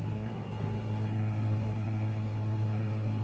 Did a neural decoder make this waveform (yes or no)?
yes